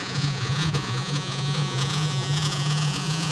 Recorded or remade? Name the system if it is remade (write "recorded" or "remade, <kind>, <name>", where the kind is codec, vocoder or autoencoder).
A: remade, vocoder, Vocos